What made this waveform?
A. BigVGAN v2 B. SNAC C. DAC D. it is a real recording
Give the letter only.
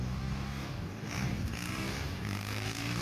C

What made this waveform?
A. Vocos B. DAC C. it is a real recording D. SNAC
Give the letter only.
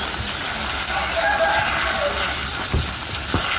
C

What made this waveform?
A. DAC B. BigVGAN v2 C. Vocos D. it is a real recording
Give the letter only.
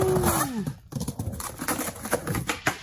D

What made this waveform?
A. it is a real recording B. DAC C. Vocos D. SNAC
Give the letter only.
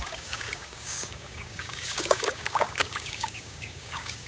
B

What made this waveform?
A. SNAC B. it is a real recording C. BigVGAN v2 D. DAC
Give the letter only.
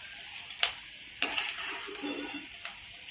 B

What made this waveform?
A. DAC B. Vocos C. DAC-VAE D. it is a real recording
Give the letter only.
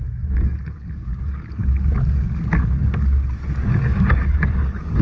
A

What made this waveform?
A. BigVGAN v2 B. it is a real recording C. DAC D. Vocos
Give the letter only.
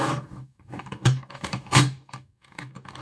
C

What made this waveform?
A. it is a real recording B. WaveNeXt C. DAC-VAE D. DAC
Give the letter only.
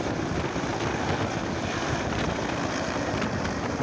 A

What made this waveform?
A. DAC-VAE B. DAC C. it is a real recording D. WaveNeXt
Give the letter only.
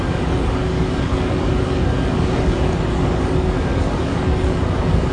B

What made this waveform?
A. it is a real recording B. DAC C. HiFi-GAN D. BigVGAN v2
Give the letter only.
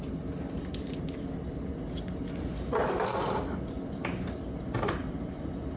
A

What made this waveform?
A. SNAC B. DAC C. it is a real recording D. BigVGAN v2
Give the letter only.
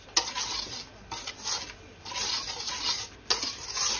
C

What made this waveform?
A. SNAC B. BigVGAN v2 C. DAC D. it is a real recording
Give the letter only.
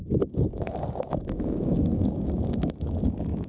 C